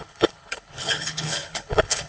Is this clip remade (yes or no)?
yes